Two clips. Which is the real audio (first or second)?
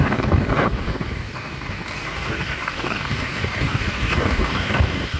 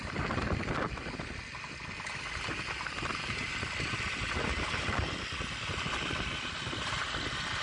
second